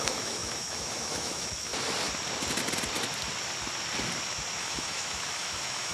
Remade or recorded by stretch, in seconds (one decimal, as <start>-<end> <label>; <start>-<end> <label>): 0.0-1.7 remade; 1.7-4.6 recorded; 4.6-5.9 remade